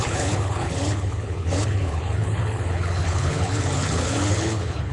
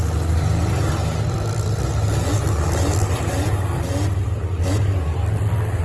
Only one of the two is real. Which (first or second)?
second